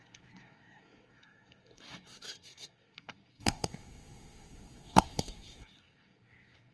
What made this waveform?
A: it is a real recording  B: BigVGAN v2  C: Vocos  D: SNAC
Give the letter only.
D